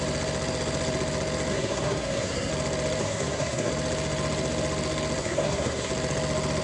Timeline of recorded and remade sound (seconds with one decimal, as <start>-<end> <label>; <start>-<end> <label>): 0.0-1.5 recorded; 1.5-2.5 remade; 2.5-3.0 recorded; 3.0-3.7 remade; 3.7-5.2 recorded; 5.2-5.9 remade; 5.9-6.6 recorded

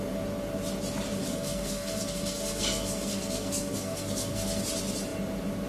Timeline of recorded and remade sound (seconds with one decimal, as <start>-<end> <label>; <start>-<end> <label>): 0.0-1.2 recorded; 1.2-4.6 remade; 4.6-5.7 recorded

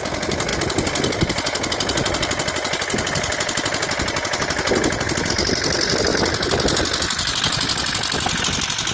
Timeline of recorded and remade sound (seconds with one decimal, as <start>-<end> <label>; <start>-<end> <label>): 0.0-8.9 recorded

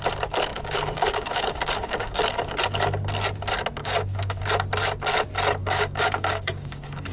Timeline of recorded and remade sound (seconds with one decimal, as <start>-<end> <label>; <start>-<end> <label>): 0.0-0.5 recorded; 0.5-2.2 remade; 2.2-3.8 recorded; 3.8-4.4 remade; 4.4-5.6 recorded; 5.6-7.1 remade